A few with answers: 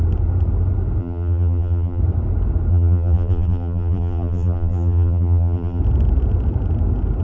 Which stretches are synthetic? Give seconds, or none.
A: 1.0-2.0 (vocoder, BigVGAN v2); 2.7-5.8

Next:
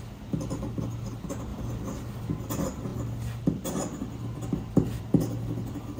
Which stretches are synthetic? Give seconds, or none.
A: none

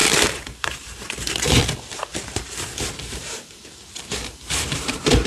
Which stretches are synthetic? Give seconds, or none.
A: 0.0-1.6 (vocoder, BigVGAN v2); 2.1-5.3

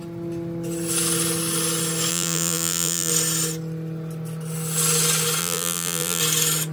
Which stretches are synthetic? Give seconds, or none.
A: 2.1-3.1 (vocoder, BigVGAN v2); 5.4-6.2

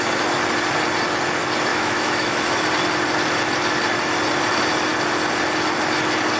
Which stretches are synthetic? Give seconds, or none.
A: 1.7-2.7 (autoencoder, DAC-VAE)

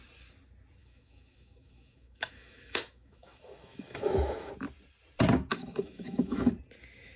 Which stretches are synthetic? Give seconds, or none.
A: 0.8-4.5 (autoencoder, DAC-VAE); 5.5-6.5

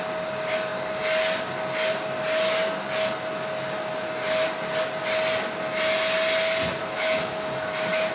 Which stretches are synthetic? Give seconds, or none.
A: 6.8-8.1 (autoencoder, DAC-VAE)

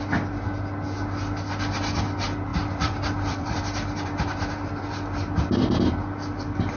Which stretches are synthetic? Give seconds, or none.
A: 2.5-4.0 (vocoder, BigVGAN v2)